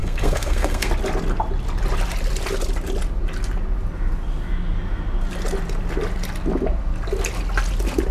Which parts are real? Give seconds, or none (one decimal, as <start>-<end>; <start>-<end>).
0.9-8.1